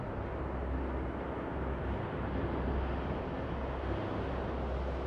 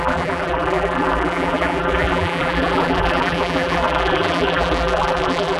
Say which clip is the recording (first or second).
first